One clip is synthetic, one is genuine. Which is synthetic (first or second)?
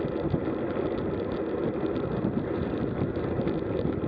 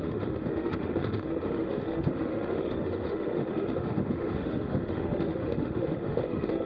second